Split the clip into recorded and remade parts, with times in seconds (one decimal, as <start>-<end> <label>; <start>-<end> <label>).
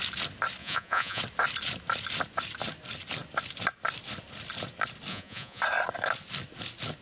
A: 0.0-0.6 recorded; 0.6-1.2 remade; 1.2-5.1 recorded; 5.1-5.6 remade; 5.6-7.0 recorded